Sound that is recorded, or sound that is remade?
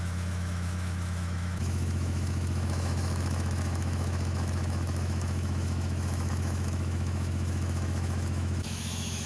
remade